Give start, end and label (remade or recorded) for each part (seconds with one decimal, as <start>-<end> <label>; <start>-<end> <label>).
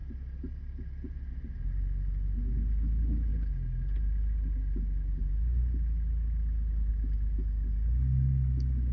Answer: 0.0-8.9 recorded